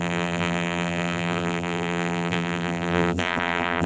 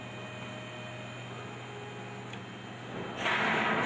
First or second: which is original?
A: second